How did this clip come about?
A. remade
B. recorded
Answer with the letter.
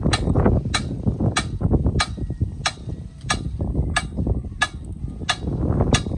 B